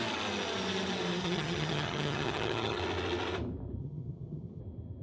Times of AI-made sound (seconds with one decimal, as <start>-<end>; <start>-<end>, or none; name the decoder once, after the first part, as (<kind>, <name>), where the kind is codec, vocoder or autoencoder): 1.2-2.8 (vocoder, HiFi-GAN); 3.8-4.6